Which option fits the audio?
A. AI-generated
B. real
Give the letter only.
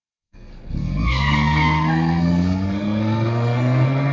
A